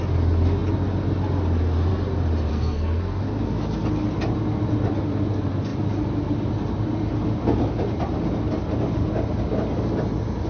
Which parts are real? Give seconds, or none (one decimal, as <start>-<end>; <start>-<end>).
0.0-2.5; 3.2-10.5